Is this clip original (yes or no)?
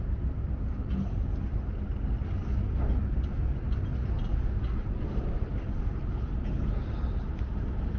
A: yes